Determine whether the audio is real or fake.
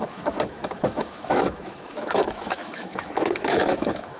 fake